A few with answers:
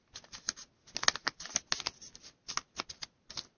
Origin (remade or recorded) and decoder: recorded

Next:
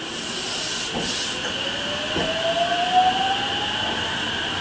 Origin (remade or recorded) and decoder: recorded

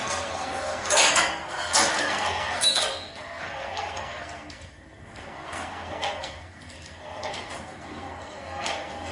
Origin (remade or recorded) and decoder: remade, codec, SNAC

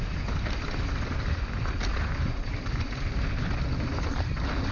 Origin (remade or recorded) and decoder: recorded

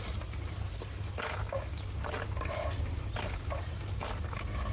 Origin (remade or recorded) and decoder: recorded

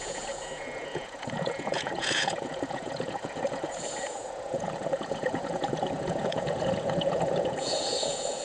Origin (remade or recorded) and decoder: remade, vocoder, Vocos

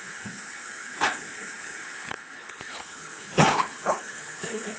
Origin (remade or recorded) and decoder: remade, codec, HILCodec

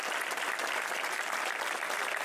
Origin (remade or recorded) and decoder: recorded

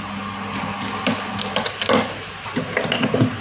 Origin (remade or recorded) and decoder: recorded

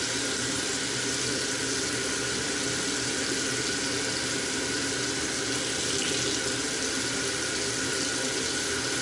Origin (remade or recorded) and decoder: recorded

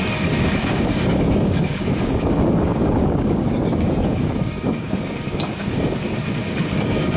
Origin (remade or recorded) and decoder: remade, codec, DAC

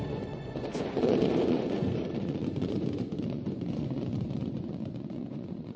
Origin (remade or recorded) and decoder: remade, vocoder, Vocos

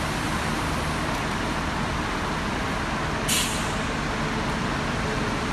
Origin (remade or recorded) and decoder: recorded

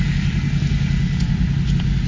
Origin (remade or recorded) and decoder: recorded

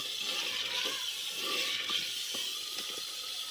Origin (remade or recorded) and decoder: recorded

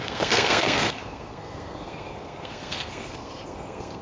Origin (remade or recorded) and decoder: remade, codec, SNAC